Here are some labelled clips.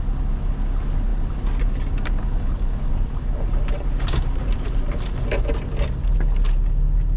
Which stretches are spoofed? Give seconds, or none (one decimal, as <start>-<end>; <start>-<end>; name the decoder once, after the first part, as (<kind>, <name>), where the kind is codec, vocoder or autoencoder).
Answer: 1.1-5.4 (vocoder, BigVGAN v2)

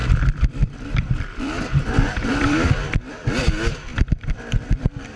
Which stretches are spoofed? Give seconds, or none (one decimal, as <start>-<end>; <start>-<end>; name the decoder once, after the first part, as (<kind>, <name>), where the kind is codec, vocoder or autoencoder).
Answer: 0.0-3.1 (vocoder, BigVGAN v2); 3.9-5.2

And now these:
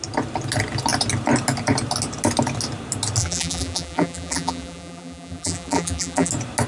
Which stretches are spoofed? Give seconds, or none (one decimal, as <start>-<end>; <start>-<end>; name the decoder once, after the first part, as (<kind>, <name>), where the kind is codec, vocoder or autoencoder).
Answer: 3.2-6.3 (vocoder, BigVGAN v2)

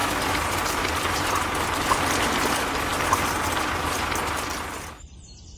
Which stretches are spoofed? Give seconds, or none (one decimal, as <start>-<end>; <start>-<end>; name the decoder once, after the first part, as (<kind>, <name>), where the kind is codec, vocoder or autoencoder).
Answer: none

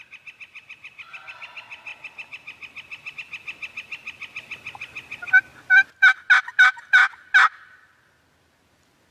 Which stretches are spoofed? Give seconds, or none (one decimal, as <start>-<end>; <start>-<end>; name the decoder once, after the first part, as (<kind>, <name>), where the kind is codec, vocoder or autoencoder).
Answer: none

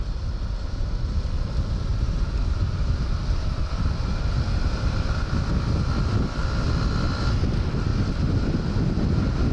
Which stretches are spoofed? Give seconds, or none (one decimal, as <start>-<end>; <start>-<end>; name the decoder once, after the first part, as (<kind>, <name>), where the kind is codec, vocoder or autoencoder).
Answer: 1.9-5.9 (vocoder, BigVGAN v2); 6.4-7.2; 7.9-8.8

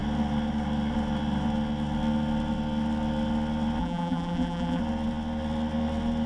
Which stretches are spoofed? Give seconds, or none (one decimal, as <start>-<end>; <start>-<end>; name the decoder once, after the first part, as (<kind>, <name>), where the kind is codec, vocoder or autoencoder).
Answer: 3.8-4.8 (vocoder, BigVGAN v2)